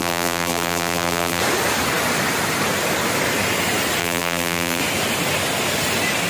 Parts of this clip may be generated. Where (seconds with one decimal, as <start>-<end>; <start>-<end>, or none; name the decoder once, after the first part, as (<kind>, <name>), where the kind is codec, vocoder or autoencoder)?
0.0-1.4 (vocoder, BigVGAN v2); 4.0-4.8